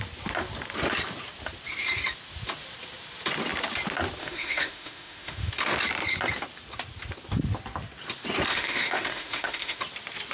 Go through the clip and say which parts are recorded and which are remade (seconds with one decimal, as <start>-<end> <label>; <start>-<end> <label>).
0.0-4.2 recorded; 4.2-5.5 remade; 5.5-8.5 recorded; 8.5-9.8 remade; 9.8-10.3 recorded